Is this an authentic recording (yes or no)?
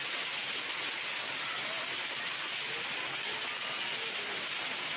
yes